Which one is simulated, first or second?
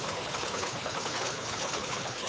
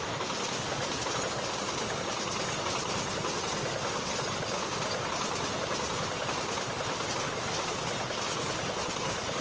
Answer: first